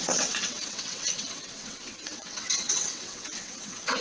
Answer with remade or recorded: remade